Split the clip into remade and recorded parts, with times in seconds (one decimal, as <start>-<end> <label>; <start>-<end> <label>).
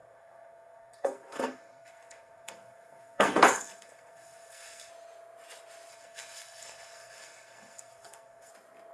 0.0-4.9 remade; 4.9-5.9 recorded; 5.9-8.5 remade; 8.5-8.9 recorded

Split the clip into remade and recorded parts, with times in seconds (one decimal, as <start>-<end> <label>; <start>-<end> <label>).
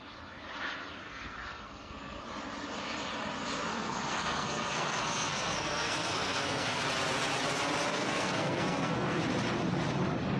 0.0-1.0 recorded; 1.0-2.2 remade; 2.2-3.7 recorded; 3.7-6.8 remade; 6.8-7.9 recorded; 7.9-9.2 remade; 9.2-10.4 recorded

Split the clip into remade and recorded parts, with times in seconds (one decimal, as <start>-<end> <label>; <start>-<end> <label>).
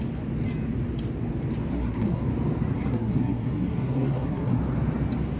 0.0-1.7 recorded; 1.7-2.2 remade; 2.2-2.7 recorded; 2.7-4.6 remade; 4.6-5.4 recorded